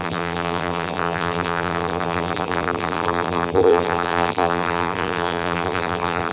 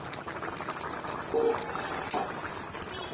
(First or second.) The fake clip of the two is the first